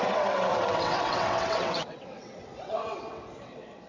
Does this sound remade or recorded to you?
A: remade